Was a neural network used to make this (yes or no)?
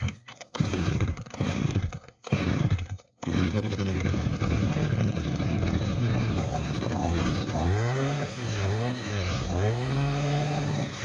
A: yes